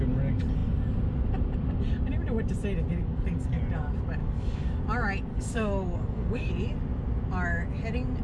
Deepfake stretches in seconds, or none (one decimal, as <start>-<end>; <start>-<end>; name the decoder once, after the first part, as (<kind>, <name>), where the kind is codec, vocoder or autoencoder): 3.0-3.6 (codec, DAC); 4.2-4.8; 5.3-6.5